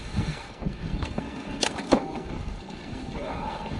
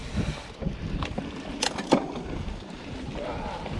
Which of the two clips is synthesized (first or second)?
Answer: first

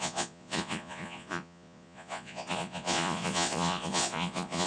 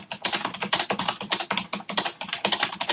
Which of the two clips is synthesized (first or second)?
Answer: first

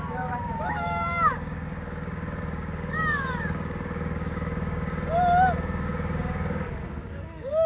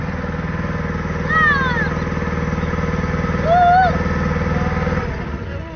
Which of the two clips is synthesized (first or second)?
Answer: first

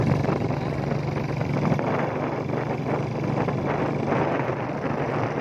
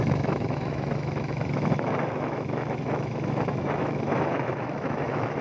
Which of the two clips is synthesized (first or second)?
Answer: second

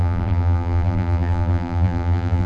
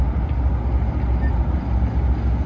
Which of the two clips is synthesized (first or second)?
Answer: first